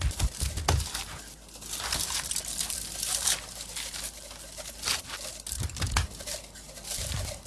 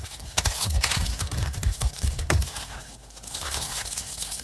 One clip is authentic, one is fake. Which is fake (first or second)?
second